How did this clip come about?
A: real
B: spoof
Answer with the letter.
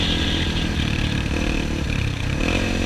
B